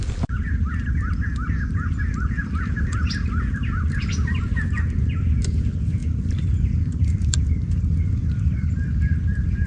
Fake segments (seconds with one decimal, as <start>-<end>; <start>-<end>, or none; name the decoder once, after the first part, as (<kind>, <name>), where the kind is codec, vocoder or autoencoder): 2.4-3.1 (vocoder, BigVGAN v2); 3.6-4.4; 6.0-8.6